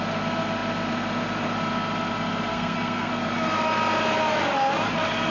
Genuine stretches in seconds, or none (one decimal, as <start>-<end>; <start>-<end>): 0.0-2.5; 3.1-5.3